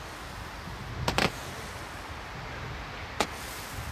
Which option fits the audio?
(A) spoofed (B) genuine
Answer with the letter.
B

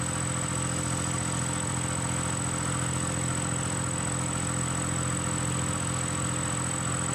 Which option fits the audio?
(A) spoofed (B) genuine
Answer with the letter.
B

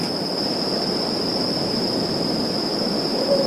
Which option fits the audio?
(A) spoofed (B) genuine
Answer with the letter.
A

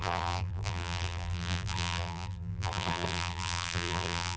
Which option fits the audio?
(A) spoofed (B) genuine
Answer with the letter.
A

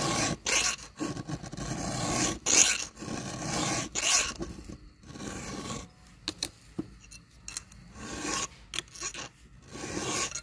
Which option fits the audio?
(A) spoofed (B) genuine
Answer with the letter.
B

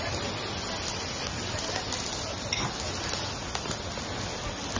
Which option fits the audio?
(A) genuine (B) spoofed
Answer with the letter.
A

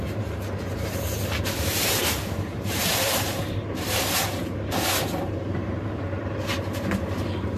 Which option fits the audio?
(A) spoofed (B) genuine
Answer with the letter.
A